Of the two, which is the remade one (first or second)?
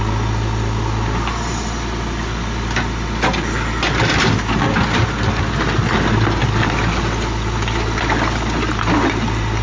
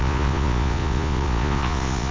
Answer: second